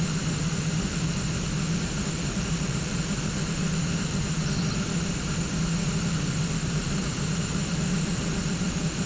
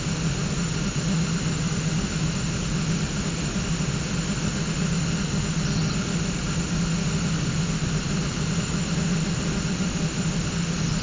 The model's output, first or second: first